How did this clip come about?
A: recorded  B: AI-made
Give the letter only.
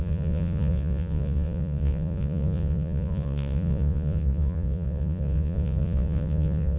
B